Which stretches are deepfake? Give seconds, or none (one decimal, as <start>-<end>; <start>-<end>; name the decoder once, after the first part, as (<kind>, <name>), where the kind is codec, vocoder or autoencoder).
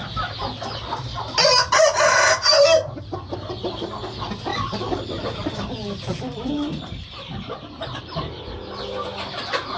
1.1-3.5 (vocoder, BigVGAN v2); 4.5-8.0